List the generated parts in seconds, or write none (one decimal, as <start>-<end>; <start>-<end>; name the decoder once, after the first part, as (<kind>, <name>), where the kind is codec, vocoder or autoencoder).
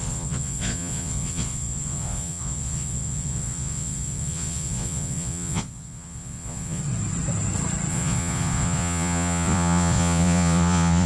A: 0.0-6.8 (vocoder, Vocos); 7.9-11.1